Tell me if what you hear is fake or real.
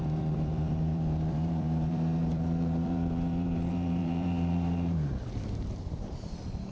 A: fake